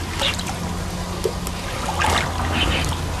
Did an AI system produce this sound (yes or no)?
no